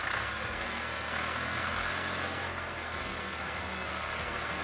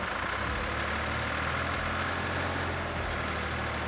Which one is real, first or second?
second